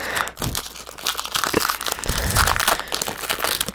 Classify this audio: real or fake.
real